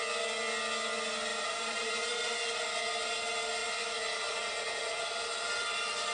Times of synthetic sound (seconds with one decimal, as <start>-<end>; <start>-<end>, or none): 1.3-2.6